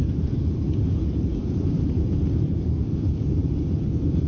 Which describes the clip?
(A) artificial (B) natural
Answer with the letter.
A